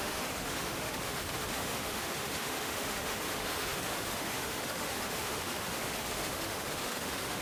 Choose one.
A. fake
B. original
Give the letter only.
A